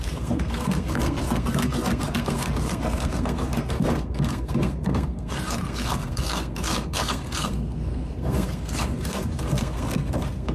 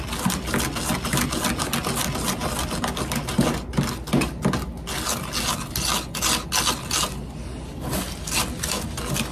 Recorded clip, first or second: second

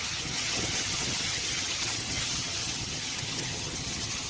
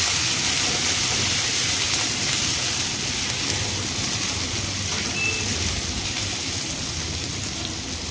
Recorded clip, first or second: second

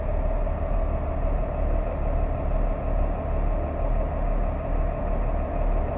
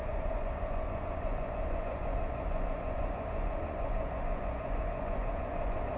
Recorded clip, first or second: first